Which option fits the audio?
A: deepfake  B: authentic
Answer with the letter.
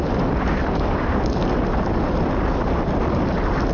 A